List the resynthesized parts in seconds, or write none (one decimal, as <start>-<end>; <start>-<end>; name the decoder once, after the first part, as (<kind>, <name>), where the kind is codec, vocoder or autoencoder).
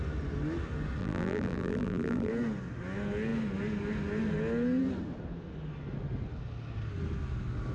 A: 1.0-2.3 (vocoder, BigVGAN v2)